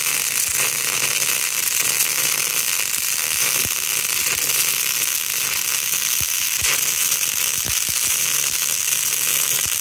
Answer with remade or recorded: recorded